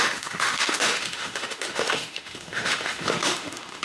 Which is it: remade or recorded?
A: remade